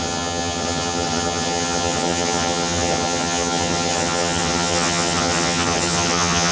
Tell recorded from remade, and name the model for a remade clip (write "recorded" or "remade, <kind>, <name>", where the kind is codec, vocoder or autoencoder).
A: remade, vocoder, HiFi-GAN